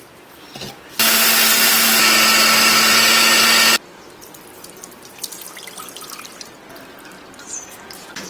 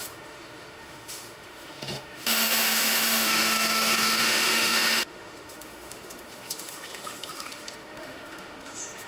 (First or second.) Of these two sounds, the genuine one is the first